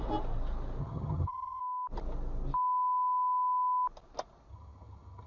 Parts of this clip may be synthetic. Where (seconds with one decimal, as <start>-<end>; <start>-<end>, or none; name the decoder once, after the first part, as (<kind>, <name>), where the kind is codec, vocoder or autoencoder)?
0.8-1.6 (vocoder, HiFi-GAN); 4.5-5.3